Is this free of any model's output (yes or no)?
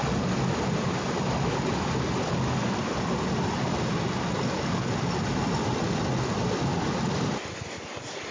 yes